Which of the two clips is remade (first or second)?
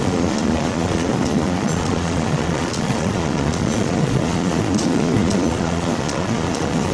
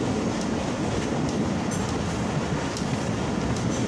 first